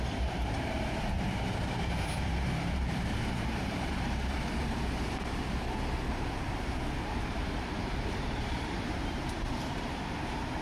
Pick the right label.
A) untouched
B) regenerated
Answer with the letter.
B